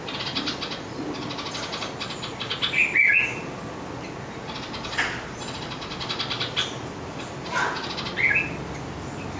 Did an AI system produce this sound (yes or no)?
no